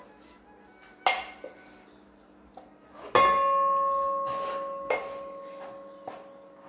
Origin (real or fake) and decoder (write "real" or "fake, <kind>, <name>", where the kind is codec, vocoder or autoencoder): real